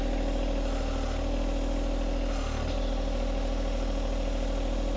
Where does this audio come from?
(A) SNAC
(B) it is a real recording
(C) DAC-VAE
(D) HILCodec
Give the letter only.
B